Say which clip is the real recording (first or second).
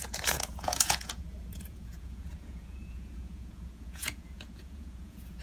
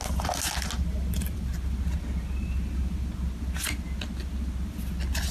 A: second